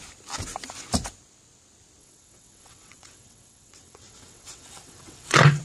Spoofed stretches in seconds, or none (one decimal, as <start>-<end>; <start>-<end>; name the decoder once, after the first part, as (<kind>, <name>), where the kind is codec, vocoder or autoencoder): 2.0-5.6 (vocoder, WaveNeXt)